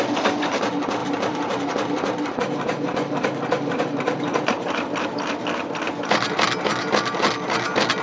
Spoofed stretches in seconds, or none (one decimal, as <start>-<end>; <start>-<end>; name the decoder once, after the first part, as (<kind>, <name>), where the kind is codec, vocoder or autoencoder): 1.0-5.0 (vocoder, BigVGAN v2)